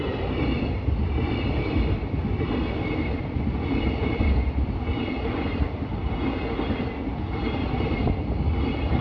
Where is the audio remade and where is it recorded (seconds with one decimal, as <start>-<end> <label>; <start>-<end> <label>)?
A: 0.0-6.0 remade; 6.0-7.9 recorded; 7.9-9.0 remade